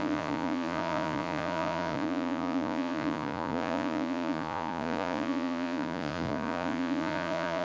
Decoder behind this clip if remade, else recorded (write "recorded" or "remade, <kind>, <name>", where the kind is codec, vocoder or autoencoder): remade, vocoder, Vocos